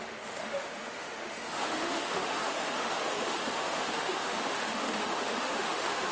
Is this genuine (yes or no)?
no